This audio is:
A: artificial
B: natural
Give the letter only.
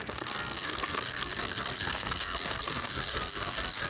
A